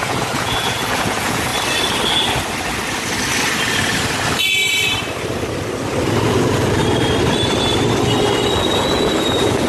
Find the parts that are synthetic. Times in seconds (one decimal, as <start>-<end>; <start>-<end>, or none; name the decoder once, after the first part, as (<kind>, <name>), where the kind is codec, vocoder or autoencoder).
0.0-1.5 (vocoder, Vocos); 6.3-6.8; 8.6-9.7